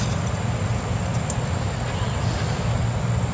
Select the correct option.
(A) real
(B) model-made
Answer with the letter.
A